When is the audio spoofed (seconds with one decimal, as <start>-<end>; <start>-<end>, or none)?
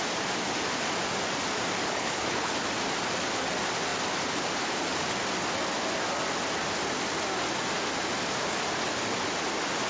1.9-2.5